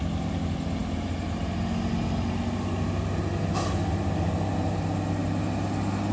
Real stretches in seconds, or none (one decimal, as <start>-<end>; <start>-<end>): 0.0-6.1